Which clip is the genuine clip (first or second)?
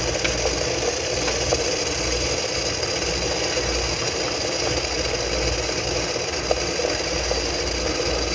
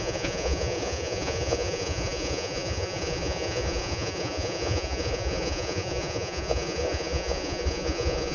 first